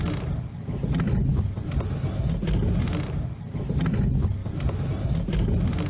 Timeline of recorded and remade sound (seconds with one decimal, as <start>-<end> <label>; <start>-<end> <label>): 0.0-5.9 recorded